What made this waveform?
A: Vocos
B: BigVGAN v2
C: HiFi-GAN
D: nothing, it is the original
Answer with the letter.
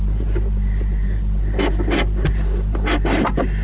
D